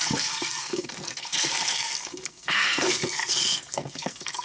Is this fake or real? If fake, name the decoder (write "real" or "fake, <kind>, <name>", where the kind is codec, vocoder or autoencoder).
fake, codec, SNAC